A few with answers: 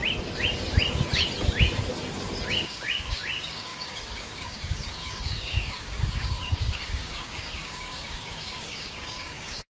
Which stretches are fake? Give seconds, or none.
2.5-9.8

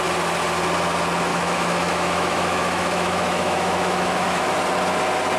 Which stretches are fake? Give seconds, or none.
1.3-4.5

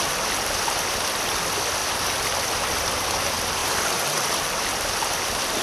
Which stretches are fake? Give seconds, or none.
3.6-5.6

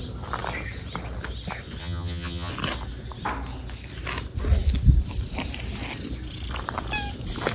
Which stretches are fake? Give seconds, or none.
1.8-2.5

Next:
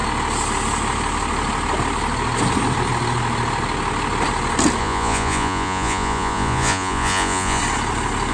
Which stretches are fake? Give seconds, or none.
4.8-7.6

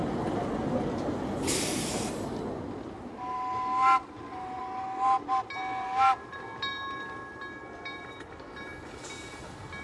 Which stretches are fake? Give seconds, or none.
none

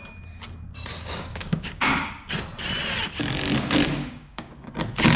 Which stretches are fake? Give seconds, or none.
0.9-2.1; 4.0-4.7

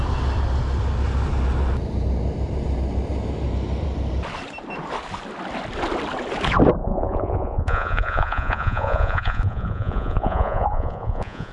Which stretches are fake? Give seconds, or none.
6.8-11.5